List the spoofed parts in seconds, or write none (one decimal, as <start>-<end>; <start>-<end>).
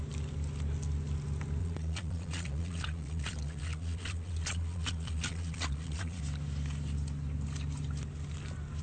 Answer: 1.6-6.2